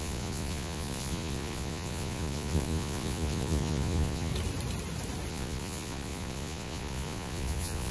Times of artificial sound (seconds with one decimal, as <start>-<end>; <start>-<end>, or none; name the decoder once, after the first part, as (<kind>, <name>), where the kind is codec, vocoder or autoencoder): 0.0-4.3 (vocoder, Vocos); 5.3-7.9